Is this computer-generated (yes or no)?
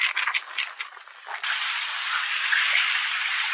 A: no